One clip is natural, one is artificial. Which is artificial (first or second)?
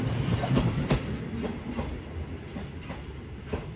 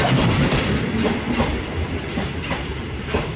second